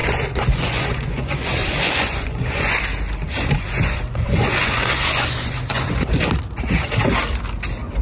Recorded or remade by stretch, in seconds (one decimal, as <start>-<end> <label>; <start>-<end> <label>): 0.0-2.8 remade; 2.8-3.3 recorded; 3.3-6.2 remade; 6.2-8.0 recorded